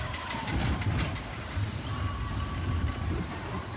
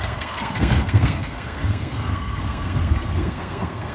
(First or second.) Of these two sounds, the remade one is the second